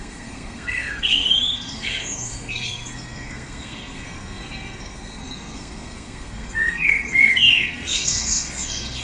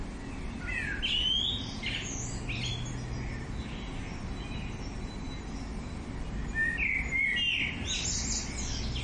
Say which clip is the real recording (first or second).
second